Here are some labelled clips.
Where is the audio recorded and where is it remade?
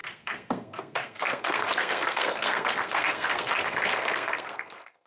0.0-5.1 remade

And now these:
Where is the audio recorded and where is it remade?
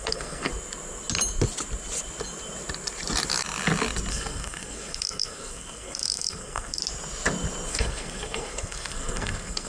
0.0-0.5 remade; 0.5-4.1 recorded; 4.1-6.8 remade; 6.8-7.7 recorded; 7.7-9.7 remade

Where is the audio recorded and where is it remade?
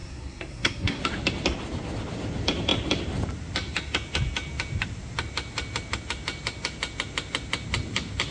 0.0-1.0 remade; 1.0-8.3 recorded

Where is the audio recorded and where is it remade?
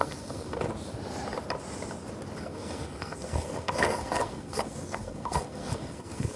0.0-0.7 remade; 0.7-2.4 recorded; 2.4-6.4 remade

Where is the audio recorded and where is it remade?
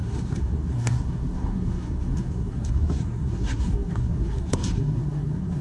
0.0-5.6 remade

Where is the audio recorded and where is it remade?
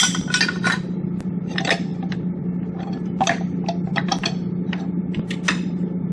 0.0-6.1 recorded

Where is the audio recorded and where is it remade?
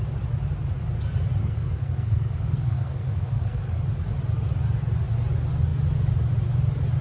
0.0-1.4 recorded; 1.4-3.8 remade; 3.8-7.0 recorded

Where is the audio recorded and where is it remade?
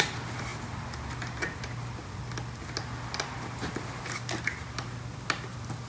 0.0-5.9 recorded